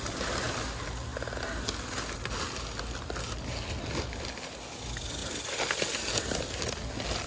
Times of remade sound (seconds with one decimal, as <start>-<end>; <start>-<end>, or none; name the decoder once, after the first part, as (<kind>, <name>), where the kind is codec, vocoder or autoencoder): none